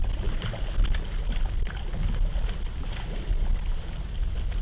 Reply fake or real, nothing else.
real